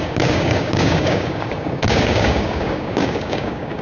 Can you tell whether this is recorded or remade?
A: remade